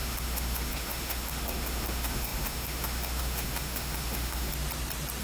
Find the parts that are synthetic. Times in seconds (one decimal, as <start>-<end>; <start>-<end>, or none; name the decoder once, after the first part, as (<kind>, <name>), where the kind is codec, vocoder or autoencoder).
0.0-4.5 (autoencoder, DAC-VAE)